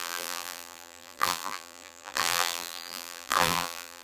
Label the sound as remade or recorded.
remade